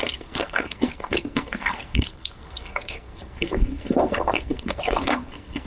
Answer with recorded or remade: remade